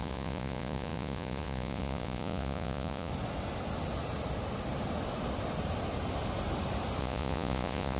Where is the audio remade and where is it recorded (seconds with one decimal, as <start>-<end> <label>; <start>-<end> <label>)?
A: 0.0-3.1 remade; 3.1-7.0 recorded; 7.0-8.0 remade